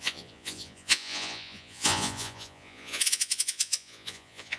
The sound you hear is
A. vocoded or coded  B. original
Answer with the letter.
A